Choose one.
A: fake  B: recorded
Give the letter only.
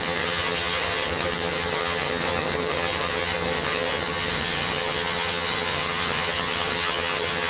A